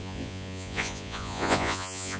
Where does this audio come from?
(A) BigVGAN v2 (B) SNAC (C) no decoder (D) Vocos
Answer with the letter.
D